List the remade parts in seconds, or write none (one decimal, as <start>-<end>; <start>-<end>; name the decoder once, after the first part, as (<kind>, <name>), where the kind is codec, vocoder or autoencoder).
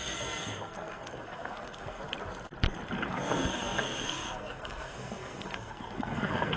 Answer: 0.0-2.0 (codec, SNAC); 3.1-6.6